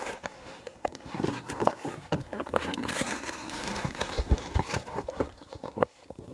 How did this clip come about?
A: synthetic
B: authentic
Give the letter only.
A